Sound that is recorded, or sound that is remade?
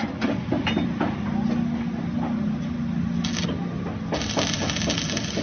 recorded